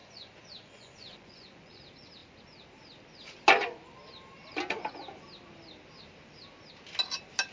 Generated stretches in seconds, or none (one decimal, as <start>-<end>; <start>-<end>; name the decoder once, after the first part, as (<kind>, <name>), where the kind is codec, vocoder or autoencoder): 0.0-1.8 (vocoder, Vocos)